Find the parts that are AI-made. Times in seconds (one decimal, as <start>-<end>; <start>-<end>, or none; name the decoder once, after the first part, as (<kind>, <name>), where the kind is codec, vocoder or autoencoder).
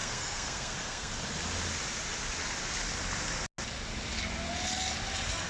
0.0-1.1 (codec, SNAC)